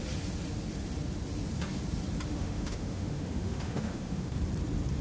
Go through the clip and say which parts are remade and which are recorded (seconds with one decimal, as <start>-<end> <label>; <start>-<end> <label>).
0.0-2.3 recorded; 2.3-4.4 remade; 4.4-5.0 recorded